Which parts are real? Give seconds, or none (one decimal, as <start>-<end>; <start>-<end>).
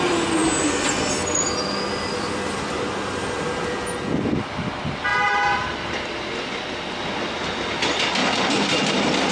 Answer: 0.0-8.2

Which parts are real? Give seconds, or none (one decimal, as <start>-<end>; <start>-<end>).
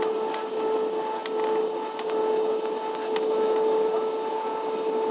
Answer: 0.0-5.1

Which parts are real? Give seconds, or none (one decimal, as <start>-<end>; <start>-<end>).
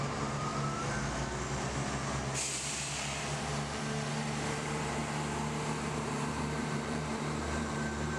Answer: 0.5-4.1; 5.0-5.9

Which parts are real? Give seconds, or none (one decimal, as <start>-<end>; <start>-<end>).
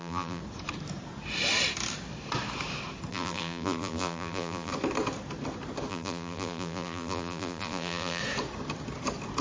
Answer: 0.4-3.1; 4.7-5.9; 8.2-9.4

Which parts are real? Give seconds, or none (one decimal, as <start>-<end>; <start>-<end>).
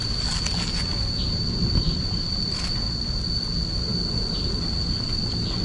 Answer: 0.0-0.9; 2.3-5.6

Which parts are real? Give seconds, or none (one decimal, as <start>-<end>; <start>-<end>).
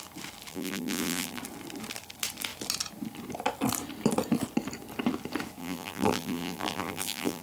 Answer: 0.0-0.5; 1.4-5.6